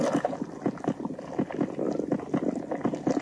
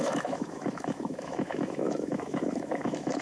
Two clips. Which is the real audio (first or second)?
first